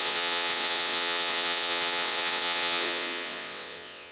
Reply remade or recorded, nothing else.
remade